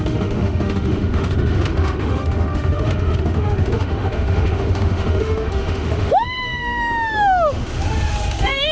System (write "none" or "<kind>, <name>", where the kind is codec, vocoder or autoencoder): autoencoder, DAC-VAE